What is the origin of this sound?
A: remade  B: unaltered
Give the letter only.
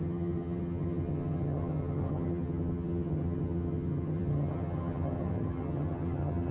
A